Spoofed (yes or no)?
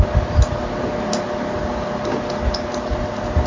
no